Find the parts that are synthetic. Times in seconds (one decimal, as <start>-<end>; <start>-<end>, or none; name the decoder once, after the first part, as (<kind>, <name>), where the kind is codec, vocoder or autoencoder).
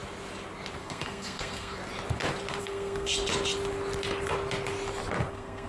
0.8-1.8 (codec, SNAC); 2.6-3.1; 5.3-5.7